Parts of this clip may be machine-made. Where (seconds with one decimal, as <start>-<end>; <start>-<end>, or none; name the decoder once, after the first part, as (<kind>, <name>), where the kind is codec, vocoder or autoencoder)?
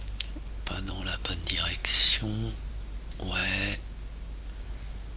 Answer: none